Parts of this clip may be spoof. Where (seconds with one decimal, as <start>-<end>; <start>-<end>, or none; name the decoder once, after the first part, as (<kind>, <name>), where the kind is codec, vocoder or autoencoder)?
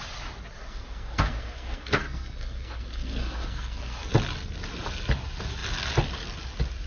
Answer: 0.6-4.1 (codec, SNAC)